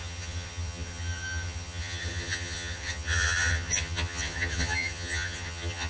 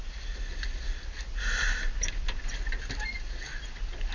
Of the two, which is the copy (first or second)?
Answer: first